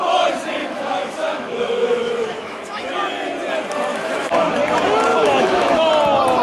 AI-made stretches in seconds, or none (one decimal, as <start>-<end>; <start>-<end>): 0.6-2.9; 3.9-4.5; 5.1-5.9